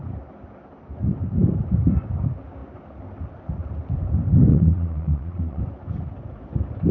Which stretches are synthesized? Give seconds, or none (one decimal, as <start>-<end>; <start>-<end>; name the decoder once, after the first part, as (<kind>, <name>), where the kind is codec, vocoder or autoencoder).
4.5-5.6 (vocoder, Vocos)